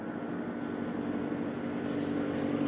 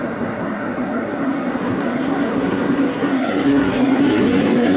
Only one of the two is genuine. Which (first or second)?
first